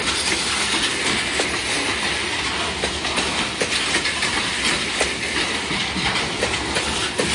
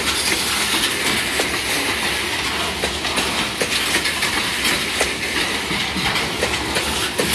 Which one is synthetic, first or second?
first